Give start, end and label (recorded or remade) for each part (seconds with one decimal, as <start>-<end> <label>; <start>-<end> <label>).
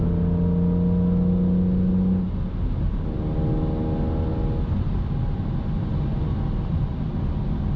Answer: 0.0-7.8 recorded